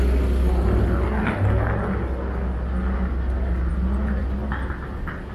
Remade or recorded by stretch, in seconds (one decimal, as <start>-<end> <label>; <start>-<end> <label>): 0.0-5.3 recorded